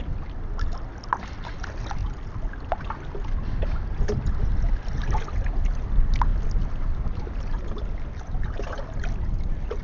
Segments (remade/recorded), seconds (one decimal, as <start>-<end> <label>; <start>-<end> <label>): 0.0-9.8 recorded